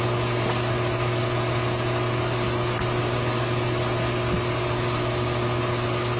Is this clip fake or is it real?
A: real